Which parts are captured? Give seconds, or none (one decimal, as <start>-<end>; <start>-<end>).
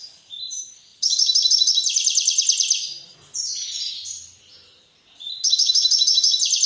0.0-0.9; 3.9-6.7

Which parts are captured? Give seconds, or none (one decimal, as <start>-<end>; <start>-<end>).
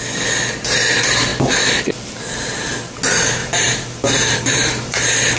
0.0-3.4